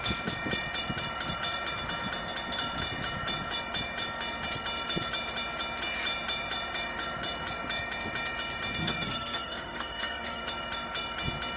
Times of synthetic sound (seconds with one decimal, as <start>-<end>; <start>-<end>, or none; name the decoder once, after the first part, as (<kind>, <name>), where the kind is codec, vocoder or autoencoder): 8.8-10.4 (codec, SNAC)